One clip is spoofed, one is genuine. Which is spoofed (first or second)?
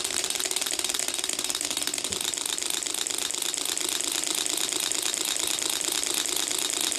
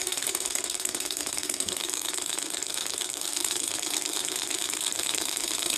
second